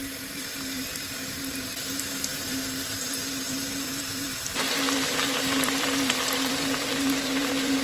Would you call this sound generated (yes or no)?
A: yes